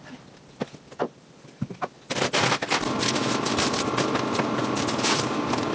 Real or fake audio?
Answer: real